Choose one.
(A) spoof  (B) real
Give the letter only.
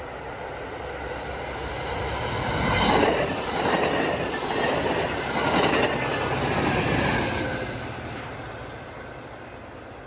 B